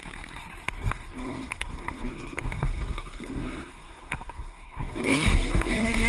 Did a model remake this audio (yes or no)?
yes